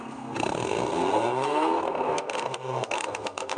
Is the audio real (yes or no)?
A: no